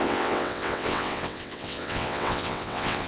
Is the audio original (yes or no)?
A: no